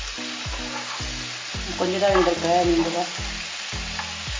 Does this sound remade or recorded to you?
recorded